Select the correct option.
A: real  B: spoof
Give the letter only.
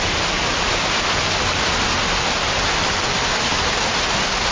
A